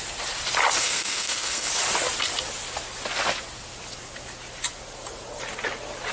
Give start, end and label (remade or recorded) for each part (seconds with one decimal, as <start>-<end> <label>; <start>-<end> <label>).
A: 0.0-0.8 recorded; 0.8-1.7 remade; 1.7-6.1 recorded